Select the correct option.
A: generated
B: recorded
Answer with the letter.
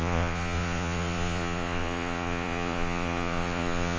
A